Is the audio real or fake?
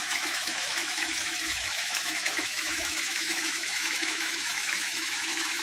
fake